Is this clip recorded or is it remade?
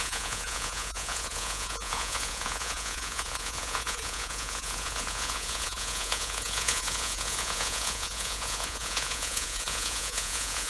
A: remade